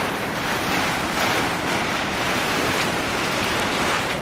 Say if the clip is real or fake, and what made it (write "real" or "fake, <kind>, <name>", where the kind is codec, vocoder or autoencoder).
fake, vocoder, BigVGAN v2